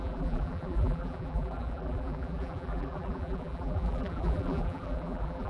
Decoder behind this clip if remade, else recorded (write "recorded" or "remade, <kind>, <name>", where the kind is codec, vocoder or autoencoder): remade, vocoder, BigVGAN v2